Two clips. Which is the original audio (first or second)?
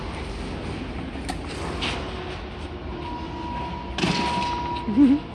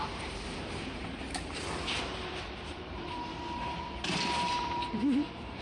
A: first